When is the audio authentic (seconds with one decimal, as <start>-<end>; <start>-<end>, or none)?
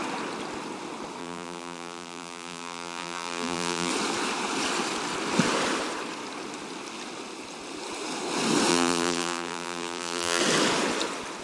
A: 0.0-1.2; 3.9-8.7; 10.4-11.4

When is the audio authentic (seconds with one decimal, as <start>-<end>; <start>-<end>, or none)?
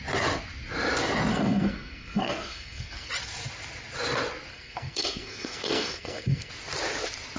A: 0.0-1.3; 3.1-4.5; 6.5-7.4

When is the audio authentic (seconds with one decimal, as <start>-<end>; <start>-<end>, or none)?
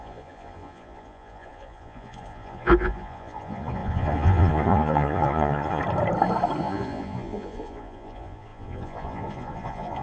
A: 5.8-6.6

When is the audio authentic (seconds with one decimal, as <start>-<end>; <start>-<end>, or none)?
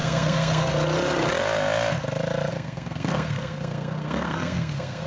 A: 0.7-2.5